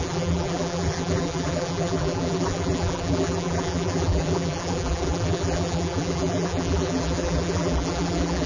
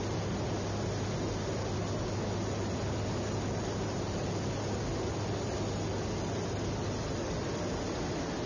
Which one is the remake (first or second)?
first